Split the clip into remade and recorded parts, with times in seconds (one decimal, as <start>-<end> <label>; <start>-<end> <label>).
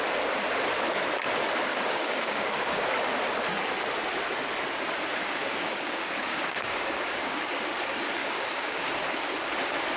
0.0-1.7 recorded; 1.7-2.8 remade; 2.8-5.4 recorded; 5.4-7.6 remade; 7.6-8.2 recorded; 8.2-9.0 remade; 9.0-10.0 recorded